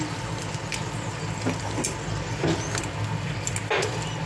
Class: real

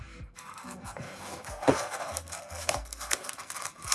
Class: fake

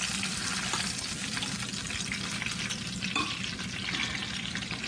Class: real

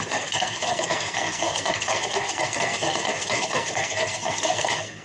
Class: fake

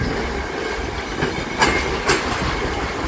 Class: real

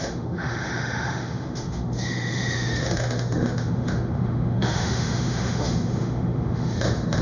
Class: fake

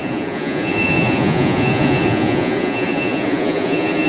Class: fake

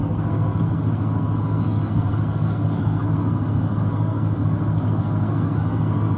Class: fake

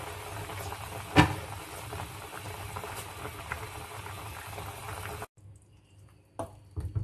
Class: real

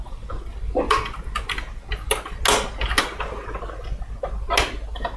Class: real